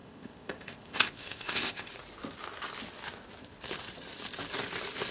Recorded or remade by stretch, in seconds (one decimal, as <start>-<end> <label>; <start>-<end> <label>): 0.0-1.9 remade; 1.9-5.1 recorded